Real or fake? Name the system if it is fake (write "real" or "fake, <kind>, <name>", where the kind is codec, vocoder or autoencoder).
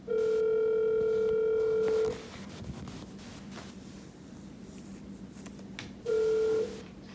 real